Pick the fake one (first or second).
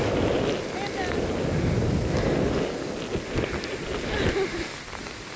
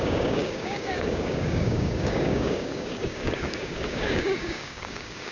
second